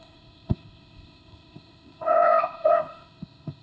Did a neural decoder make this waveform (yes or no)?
yes